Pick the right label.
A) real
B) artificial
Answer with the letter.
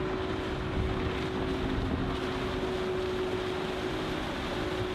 A